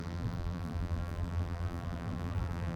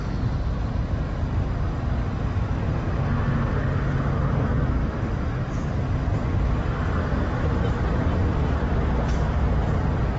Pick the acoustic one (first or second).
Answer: second